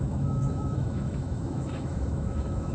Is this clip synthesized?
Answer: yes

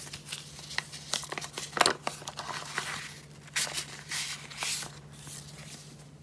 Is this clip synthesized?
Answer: no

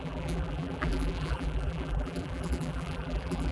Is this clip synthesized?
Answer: yes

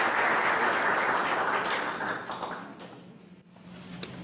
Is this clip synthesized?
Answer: no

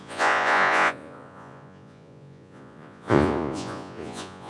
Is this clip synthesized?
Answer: yes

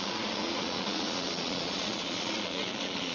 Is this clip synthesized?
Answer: yes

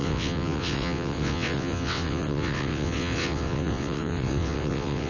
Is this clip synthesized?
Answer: yes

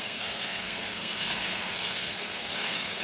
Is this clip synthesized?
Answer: yes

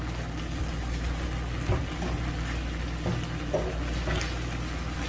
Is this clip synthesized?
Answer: no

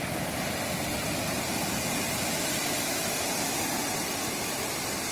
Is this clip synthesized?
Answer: no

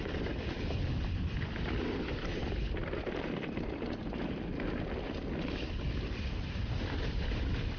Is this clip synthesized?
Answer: yes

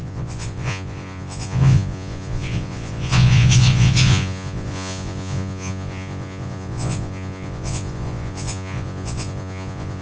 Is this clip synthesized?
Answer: yes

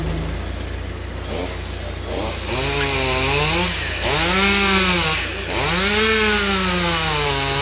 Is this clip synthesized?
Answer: no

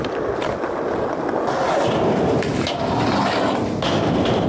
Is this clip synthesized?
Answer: no